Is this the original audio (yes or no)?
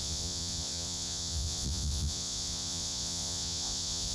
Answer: no